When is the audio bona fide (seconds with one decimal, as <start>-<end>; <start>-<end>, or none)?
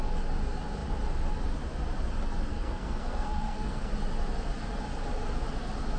0.0-2.5; 3.9-6.0